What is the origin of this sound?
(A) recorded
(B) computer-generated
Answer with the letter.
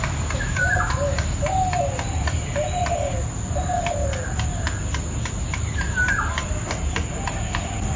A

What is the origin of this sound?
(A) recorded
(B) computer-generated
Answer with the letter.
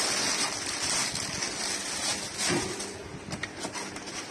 A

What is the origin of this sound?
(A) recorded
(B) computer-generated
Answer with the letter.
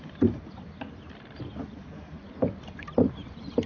A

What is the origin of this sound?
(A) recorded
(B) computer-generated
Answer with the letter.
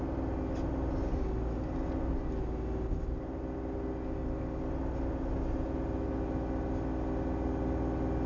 A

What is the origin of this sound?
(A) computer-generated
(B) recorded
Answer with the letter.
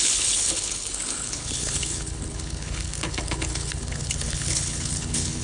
A